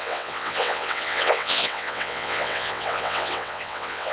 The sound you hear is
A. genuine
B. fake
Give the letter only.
B